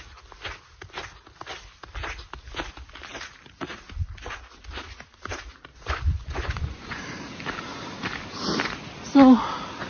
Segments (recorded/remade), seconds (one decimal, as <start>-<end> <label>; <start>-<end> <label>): 0.0-5.7 recorded; 5.7-7.0 remade; 7.0-9.9 recorded